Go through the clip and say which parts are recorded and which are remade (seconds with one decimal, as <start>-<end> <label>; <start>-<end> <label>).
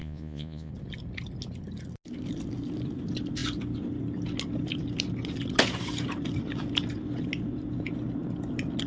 0.0-0.7 remade; 0.7-8.9 recorded